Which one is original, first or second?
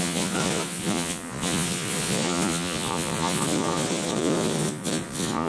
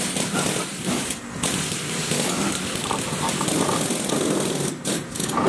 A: second